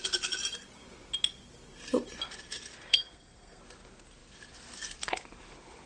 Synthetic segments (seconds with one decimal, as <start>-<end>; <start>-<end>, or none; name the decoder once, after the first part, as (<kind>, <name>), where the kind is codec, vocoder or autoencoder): 2.9-3.6 (codec, SNAC)